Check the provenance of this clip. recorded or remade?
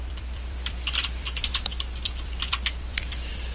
remade